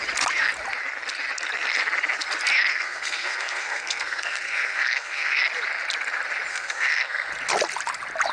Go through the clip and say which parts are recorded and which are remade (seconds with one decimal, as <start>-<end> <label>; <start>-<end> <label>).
0.0-2.7 recorded; 2.7-5.4 remade; 5.4-6.5 recorded; 6.5-7.3 remade; 7.3-8.3 recorded